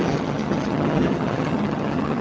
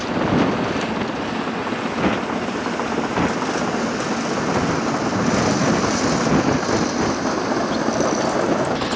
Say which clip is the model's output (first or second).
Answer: first